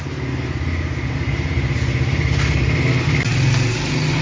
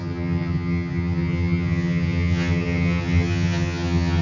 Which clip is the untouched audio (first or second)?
first